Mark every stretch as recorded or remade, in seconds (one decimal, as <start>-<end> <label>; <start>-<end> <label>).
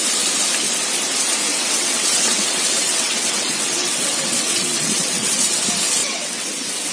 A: 0.0-1.5 recorded; 1.5-5.6 remade; 5.6-6.0 recorded; 6.0-6.9 remade